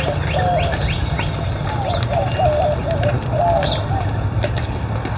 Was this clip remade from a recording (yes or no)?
no